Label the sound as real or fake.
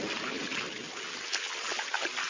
real